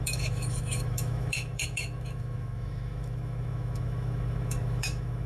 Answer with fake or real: fake